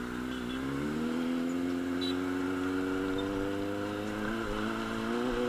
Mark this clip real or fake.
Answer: real